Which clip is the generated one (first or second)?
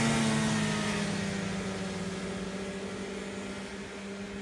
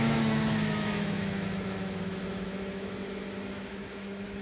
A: second